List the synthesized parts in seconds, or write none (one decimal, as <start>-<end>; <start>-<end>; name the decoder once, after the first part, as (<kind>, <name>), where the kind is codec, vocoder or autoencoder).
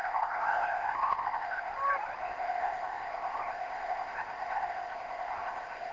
0.0-1.7 (codec, ZipCodec); 2.2-5.9